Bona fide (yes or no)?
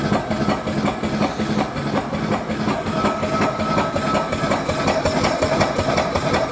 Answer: yes